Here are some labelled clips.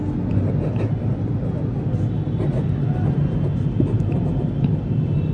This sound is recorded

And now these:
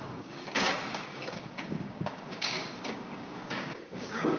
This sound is remade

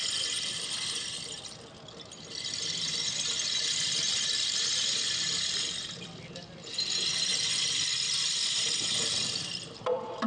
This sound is remade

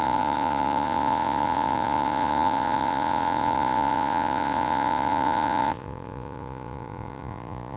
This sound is remade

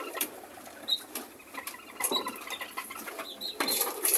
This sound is remade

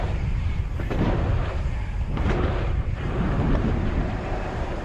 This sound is remade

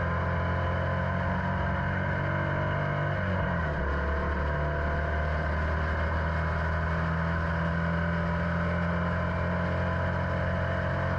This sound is recorded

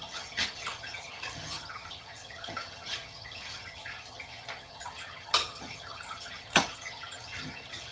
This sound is remade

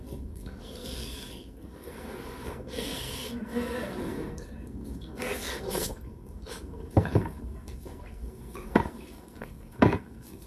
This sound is remade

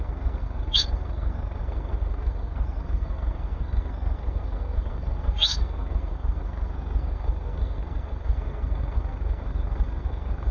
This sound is remade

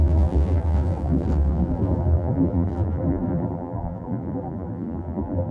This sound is remade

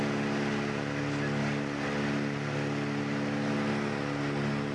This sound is recorded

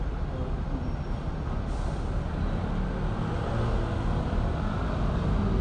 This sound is recorded